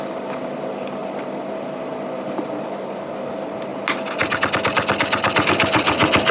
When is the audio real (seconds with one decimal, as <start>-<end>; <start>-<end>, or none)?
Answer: 0.0-6.3